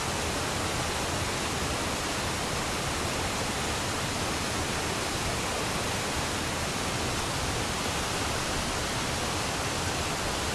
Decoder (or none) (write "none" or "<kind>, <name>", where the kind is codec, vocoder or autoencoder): none